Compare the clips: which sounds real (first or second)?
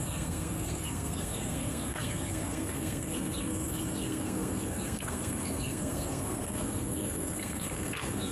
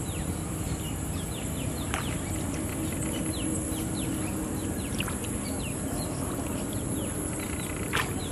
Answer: second